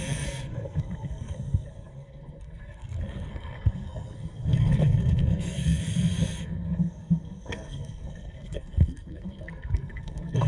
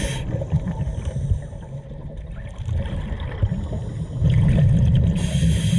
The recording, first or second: second